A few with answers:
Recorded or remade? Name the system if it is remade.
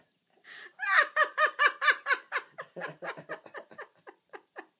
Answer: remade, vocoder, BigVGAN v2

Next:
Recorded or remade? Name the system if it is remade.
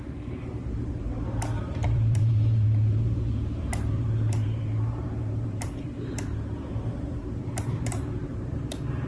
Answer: remade, vocoder, BigVGAN v2